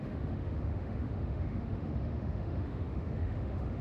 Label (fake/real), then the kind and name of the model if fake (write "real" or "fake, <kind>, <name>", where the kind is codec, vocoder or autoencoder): fake, autoencoder, DAC-VAE